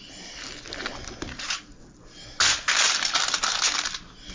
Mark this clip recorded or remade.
recorded